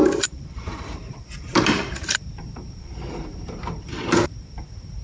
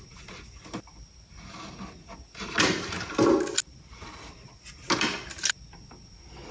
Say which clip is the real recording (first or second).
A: second